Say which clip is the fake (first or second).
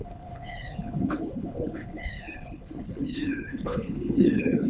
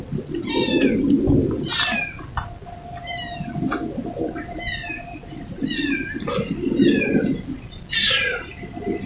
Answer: first